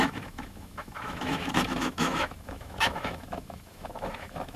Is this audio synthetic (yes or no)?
yes